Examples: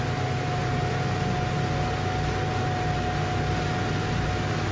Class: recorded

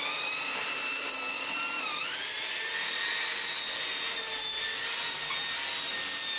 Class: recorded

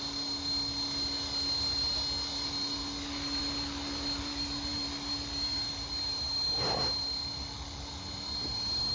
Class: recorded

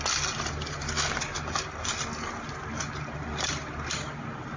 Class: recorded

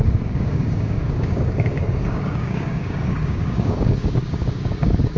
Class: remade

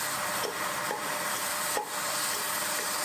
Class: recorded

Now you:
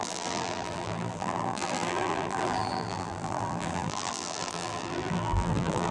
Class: remade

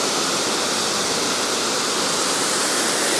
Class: recorded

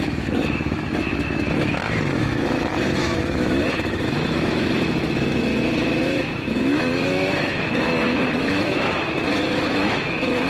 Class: remade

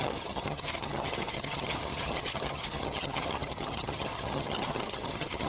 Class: remade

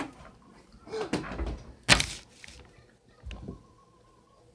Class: recorded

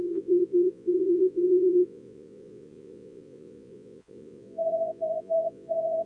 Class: remade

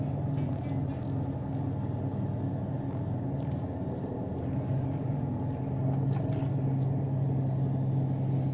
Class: recorded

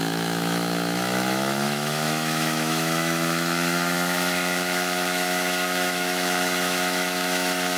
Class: remade